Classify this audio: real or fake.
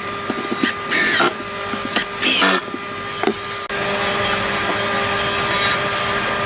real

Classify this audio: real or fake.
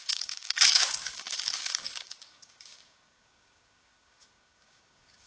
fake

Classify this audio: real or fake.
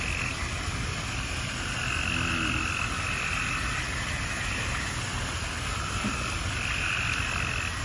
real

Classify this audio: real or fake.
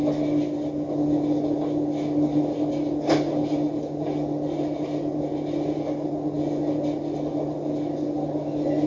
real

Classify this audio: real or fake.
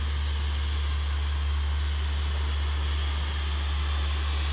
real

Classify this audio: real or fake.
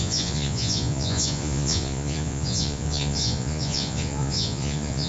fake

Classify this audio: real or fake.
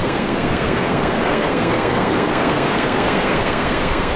fake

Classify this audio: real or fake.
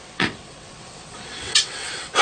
fake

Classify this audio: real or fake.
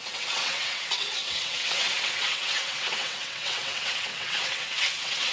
fake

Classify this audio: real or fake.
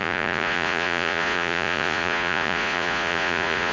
fake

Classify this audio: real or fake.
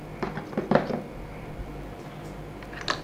real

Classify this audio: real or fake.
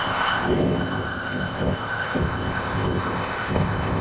fake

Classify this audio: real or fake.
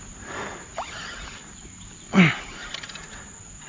real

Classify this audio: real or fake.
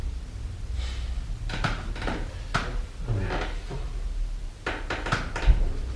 real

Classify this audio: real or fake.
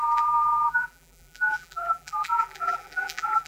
fake